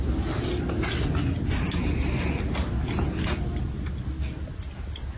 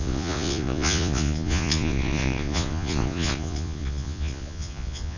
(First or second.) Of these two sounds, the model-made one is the second